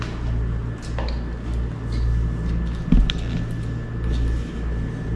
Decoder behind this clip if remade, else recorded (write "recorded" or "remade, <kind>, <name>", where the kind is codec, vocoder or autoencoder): recorded